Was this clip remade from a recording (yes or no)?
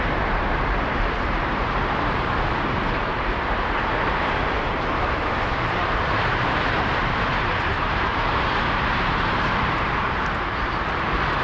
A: yes